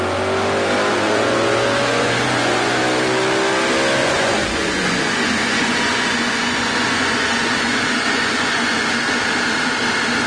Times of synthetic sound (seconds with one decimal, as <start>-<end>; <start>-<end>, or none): 0.9-2.8; 4.0-9.0